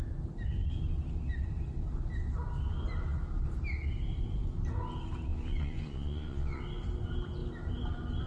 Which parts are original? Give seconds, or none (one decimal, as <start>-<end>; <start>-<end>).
0.0-5.3; 6.6-8.3